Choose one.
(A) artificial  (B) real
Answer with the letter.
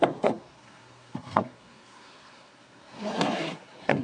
A